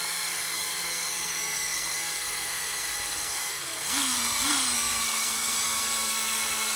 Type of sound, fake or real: fake